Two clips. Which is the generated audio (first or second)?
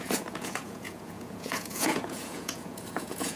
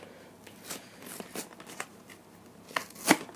first